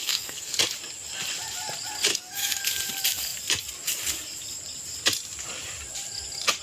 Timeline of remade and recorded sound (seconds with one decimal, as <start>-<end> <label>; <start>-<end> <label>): 0.0-0.6 remade; 0.6-2.1 recorded; 2.1-2.6 remade; 2.6-6.6 recorded